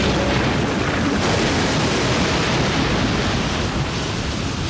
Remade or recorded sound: recorded